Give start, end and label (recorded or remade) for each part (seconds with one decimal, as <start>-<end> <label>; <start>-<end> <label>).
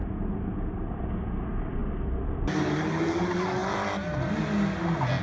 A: 0.0-5.2 recorded